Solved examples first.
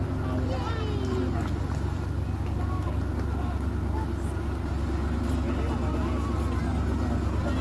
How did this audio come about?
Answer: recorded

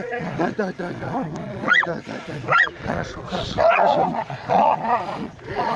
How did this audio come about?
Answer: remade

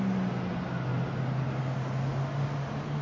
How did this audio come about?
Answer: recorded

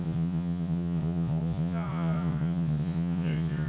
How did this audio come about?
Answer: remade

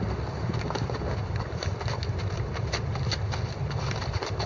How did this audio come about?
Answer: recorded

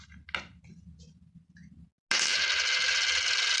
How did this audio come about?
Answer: recorded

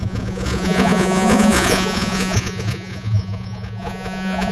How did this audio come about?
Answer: remade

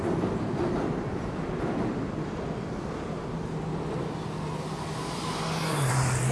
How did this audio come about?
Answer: recorded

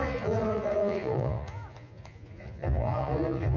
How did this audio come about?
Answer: remade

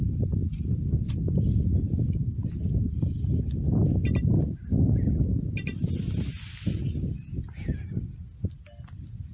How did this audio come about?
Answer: recorded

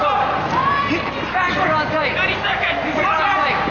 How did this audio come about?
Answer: recorded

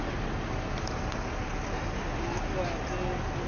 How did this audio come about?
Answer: recorded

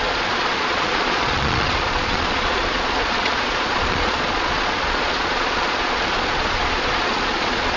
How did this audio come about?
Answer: remade